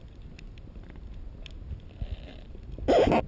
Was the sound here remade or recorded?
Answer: recorded